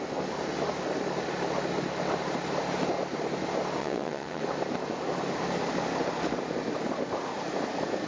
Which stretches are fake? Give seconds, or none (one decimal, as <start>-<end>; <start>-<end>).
3.8-4.4